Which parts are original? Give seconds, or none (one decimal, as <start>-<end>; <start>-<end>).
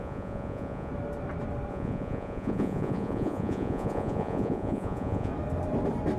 0.9-1.7; 5.3-6.2